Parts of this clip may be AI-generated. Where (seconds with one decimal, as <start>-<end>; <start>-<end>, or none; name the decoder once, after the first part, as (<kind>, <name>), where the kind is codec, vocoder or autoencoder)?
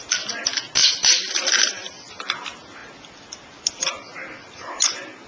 0.8-2.2 (vocoder, BigVGAN v2); 2.8-5.3